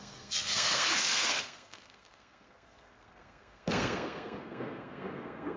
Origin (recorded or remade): remade